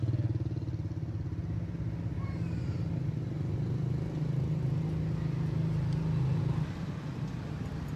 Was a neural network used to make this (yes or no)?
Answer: no